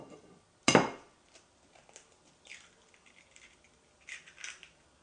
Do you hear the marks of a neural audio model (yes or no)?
no